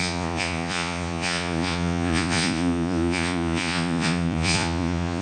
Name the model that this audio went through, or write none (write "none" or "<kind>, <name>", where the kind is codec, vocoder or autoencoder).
vocoder, Vocos